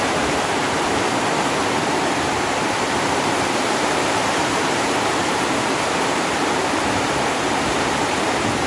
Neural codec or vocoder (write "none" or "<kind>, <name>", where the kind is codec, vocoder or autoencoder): vocoder, BigVGAN v2